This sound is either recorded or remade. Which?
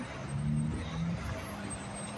recorded